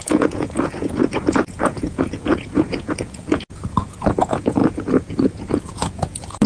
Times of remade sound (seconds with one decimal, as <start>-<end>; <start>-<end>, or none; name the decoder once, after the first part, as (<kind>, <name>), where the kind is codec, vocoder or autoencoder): 0.0-6.5 (vocoder, Vocos)